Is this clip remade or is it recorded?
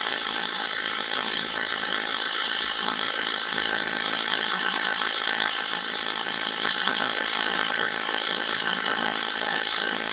remade